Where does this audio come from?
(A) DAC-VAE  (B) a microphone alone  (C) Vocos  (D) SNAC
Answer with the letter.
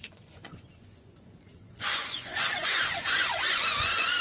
C